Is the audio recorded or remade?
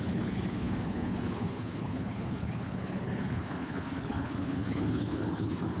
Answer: remade